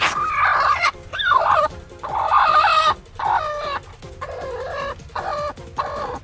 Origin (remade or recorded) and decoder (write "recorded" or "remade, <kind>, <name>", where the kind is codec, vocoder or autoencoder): recorded